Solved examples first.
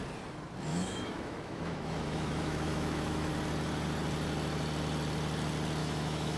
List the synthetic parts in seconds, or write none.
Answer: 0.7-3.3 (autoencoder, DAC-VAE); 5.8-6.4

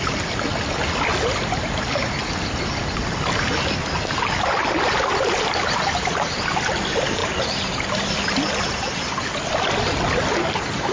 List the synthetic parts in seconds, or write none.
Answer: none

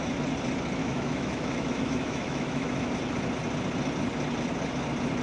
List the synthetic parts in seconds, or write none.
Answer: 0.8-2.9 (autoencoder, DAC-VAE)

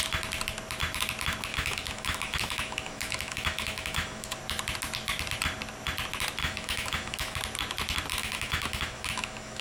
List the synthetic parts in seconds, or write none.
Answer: 1.5-4.4 (autoencoder, DAC-VAE); 6.4-7.4; 8.2-9.6